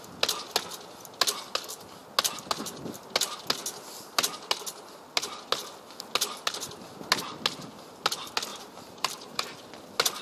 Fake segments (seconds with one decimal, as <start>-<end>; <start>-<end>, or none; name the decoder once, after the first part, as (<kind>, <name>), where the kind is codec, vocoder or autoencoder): 8.5-9.4 (vocoder, BigVGAN v2)